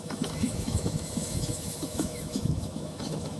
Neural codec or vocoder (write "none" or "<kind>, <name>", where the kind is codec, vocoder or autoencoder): autoencoder, DAC-VAE